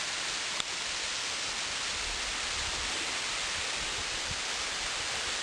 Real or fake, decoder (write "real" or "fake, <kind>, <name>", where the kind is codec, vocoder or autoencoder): real